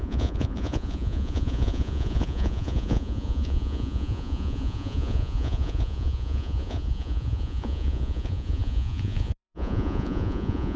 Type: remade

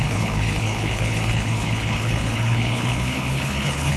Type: remade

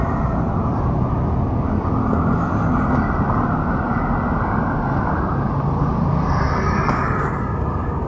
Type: recorded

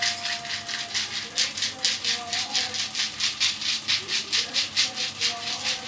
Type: recorded